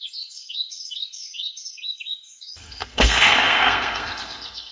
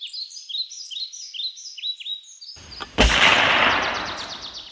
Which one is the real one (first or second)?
second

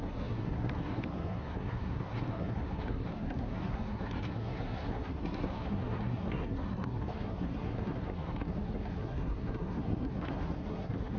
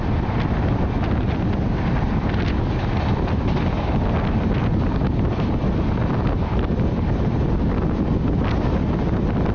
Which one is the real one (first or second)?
second